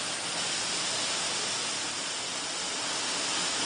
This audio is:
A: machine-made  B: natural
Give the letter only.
B